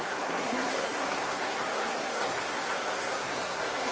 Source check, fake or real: fake